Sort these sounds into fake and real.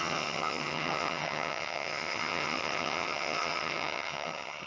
fake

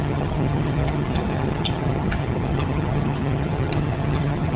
fake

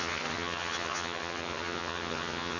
fake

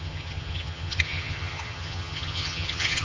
fake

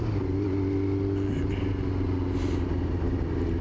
real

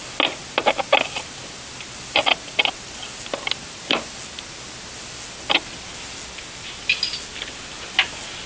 real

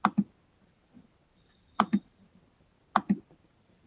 real